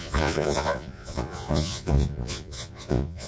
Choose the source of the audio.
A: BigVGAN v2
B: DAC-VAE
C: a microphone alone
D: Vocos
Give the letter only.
D